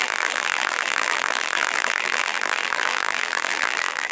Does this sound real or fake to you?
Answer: fake